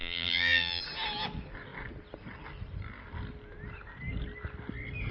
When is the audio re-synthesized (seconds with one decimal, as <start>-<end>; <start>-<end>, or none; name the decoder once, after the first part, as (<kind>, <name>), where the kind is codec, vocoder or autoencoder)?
0.0-0.8 (vocoder, BigVGAN v2)